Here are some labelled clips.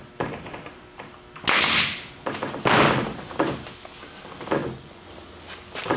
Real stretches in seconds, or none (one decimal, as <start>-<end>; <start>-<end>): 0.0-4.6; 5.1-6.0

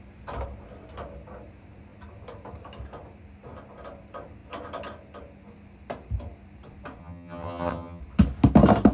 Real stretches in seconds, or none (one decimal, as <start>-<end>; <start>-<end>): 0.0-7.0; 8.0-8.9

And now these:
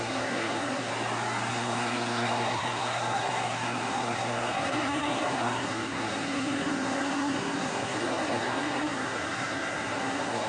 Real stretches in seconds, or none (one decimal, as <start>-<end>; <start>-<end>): 0.9-1.5